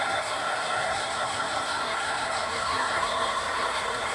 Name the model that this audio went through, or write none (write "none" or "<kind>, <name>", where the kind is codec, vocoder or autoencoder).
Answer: codec, SNAC